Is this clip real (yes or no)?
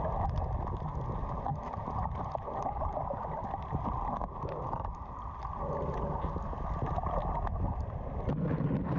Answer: yes